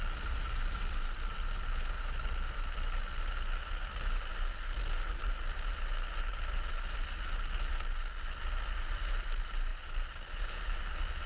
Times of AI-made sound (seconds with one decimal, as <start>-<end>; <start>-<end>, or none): none